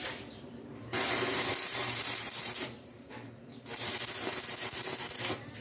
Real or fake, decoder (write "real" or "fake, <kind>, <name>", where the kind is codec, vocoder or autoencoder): fake, vocoder, BigVGAN v2